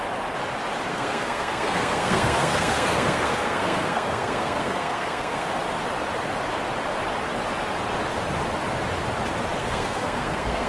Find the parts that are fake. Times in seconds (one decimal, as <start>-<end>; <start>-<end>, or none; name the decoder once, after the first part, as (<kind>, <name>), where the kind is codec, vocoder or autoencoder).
0.9-5.5 (codec, SNAC); 9.6-10.7